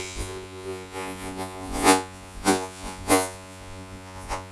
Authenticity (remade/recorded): remade